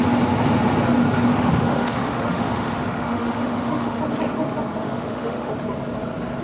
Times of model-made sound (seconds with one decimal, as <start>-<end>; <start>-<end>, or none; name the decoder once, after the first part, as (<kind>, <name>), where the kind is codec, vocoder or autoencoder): 1.3-4.0 (autoencoder, DAC-VAE); 4.8-5.5